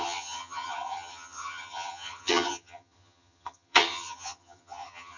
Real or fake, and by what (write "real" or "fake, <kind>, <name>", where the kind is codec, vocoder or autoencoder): fake, vocoder, HiFi-GAN